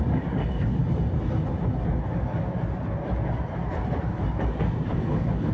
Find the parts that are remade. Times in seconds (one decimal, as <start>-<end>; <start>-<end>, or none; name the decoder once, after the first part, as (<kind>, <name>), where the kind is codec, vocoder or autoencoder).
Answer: 0.0-0.8 (codec, DAC); 4.1-5.5